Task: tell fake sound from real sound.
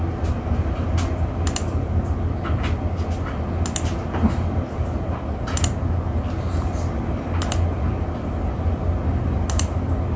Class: real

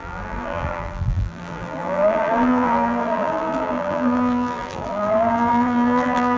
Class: fake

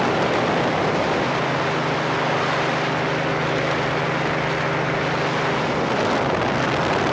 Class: real